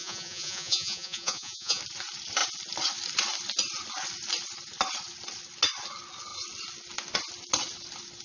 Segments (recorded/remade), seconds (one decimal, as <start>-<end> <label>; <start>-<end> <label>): 0.0-1.8 remade; 1.8-8.2 recorded